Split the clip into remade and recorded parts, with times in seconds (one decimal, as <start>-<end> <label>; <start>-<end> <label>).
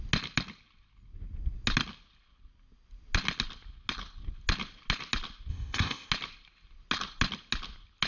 0.0-5.5 recorded; 5.5-6.1 remade; 6.1-8.1 recorded